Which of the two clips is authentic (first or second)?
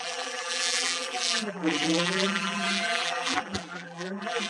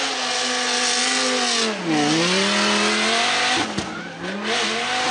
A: second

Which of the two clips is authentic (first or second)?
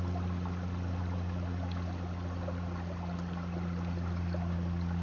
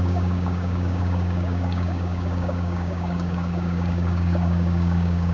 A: first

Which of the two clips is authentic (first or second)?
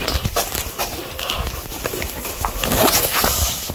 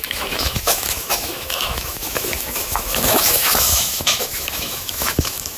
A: first